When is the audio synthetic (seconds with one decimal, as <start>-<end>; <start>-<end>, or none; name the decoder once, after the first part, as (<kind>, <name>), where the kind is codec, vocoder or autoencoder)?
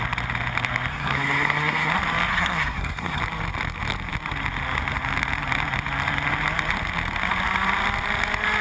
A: 0.9-1.9 (codec, SNAC); 2.3-3.2